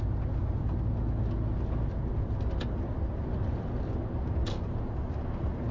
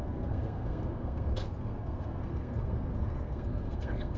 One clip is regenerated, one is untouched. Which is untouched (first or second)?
first